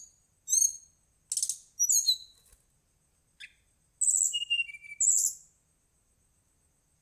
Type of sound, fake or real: real